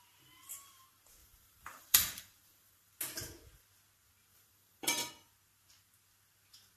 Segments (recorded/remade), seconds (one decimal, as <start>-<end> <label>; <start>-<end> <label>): 0.0-1.2 recorded; 1.2-2.9 remade; 2.9-4.3 recorded; 4.3-5.1 remade; 5.1-6.8 recorded